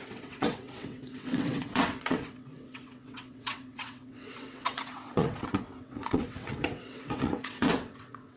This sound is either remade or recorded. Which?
remade